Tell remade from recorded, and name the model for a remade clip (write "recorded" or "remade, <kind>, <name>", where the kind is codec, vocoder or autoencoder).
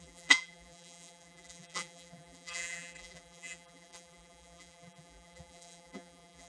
remade, vocoder, BigVGAN v2